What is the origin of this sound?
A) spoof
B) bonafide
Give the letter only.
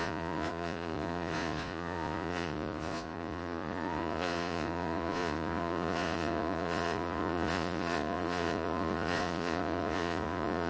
A